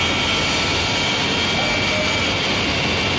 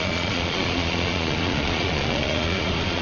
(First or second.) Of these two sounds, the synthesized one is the second